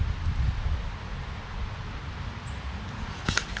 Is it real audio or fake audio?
real